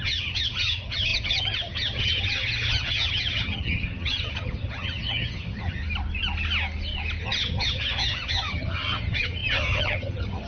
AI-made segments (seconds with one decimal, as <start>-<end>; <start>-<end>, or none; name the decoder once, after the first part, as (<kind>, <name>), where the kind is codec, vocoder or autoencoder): 0.0-5.8 (vocoder, HiFi-GAN); 7.2-10.5